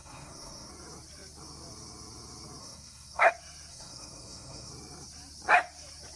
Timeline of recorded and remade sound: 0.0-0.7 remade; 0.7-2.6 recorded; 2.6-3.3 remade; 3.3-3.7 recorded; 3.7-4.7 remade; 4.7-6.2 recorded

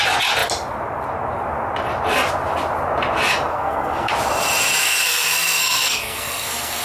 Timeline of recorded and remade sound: 0.0-3.5 recorded; 3.5-4.1 remade; 4.1-4.8 recorded; 4.8-6.8 remade

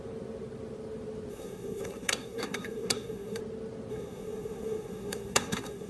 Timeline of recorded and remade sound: 0.0-1.3 recorded; 1.3-3.4 remade; 3.4-3.9 recorded; 3.9-5.9 remade

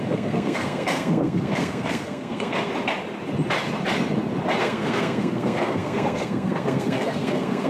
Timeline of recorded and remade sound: 0.0-2.7 remade; 2.7-4.6 recorded; 4.6-7.7 remade